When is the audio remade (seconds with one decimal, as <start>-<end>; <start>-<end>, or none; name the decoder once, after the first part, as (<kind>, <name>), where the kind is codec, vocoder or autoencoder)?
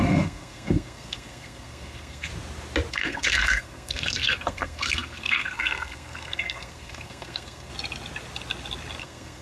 0.0-2.3 (codec, SNAC); 2.9-7.7; 9.0-9.4